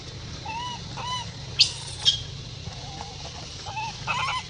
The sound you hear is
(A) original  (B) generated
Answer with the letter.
A